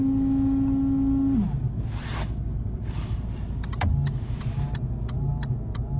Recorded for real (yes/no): yes